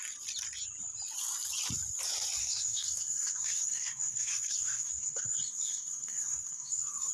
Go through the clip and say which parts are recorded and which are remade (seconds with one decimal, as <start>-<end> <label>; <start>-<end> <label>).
0.0-2.4 recorded; 2.4-7.1 remade